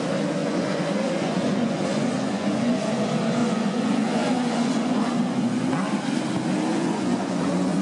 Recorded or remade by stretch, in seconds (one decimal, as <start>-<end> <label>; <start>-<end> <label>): 0.0-0.4 recorded; 0.4-2.9 remade; 2.9-3.4 recorded; 3.4-5.7 remade; 5.7-6.7 recorded; 6.7-7.8 remade